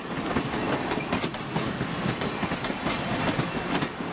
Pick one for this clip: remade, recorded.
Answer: recorded